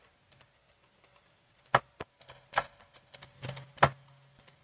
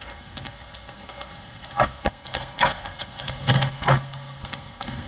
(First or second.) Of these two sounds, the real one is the first